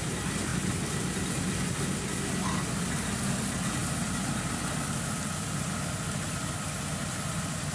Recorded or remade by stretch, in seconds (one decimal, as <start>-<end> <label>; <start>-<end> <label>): 0.0-7.7 recorded